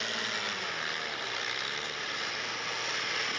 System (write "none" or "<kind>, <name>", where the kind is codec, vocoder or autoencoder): none